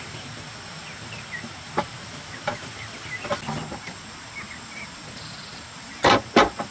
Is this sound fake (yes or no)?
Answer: no